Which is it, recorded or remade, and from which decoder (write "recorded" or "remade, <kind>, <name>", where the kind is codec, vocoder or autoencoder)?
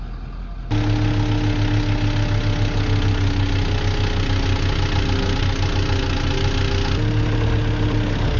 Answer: recorded